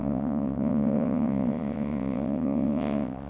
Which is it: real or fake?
fake